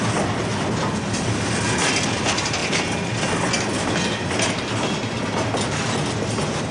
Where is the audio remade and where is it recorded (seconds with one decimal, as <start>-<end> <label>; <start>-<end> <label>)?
0.0-6.7 recorded